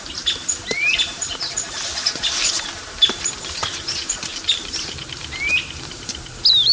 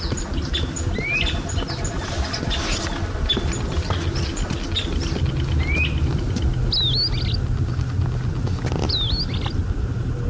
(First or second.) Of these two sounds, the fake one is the first